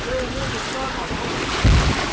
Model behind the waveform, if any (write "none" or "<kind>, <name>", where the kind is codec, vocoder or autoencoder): none